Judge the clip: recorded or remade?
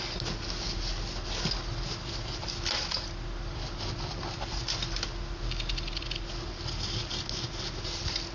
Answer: recorded